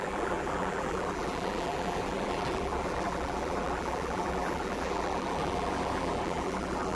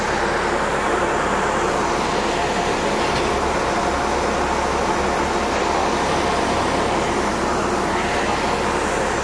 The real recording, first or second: second